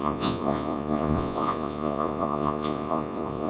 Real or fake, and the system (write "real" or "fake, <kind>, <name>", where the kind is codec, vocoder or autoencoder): fake, vocoder, Vocos